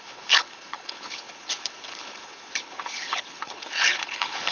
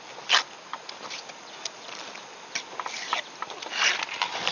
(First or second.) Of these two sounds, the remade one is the first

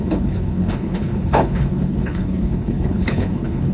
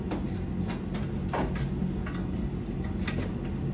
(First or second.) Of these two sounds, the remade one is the first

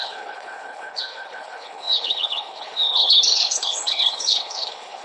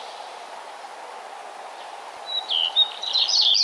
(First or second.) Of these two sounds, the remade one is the first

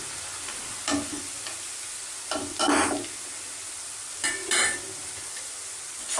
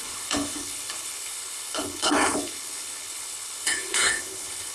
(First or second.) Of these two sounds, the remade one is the second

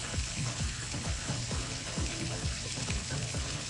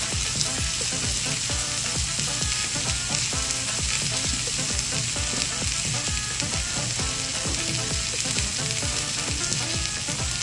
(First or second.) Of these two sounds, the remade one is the first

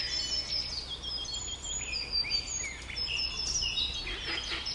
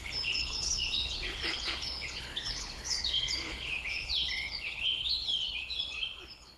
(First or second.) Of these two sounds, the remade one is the second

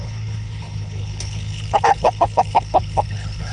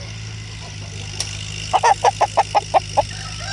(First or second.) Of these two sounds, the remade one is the first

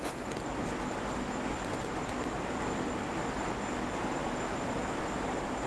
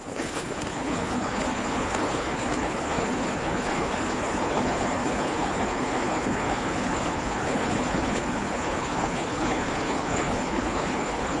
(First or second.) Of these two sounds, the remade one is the second